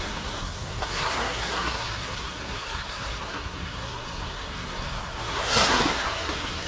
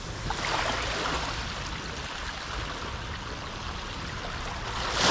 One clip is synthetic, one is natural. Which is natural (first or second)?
second